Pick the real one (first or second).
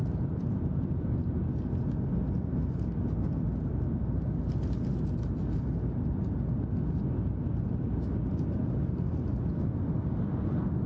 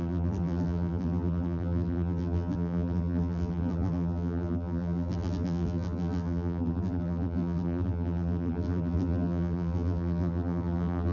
first